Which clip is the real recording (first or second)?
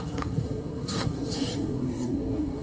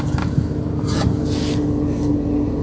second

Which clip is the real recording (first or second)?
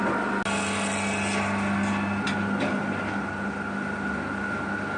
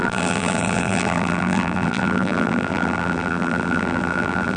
first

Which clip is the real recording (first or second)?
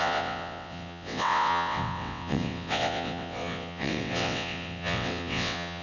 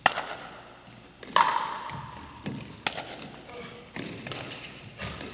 second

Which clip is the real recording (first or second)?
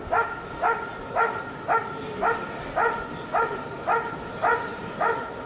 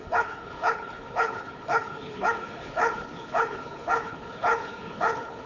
first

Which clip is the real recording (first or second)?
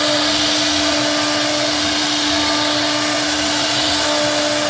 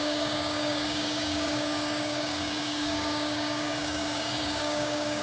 first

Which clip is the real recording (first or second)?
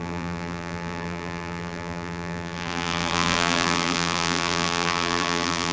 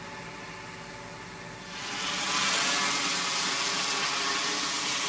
second